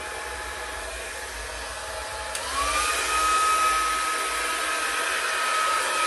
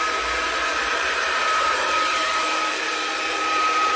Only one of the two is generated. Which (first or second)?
second